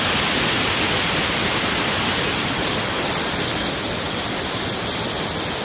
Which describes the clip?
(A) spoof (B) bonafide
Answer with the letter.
B